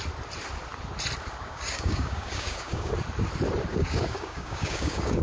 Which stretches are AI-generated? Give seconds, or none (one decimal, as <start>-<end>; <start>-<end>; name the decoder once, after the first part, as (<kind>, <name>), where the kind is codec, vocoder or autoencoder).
1.4-2.9 (codec, DAC); 3.7-5.2